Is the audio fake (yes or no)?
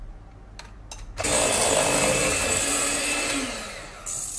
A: no